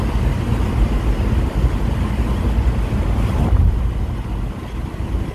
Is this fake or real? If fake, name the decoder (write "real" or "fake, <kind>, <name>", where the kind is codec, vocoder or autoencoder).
real